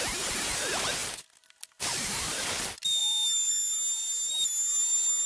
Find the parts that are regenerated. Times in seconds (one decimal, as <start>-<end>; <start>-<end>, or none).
none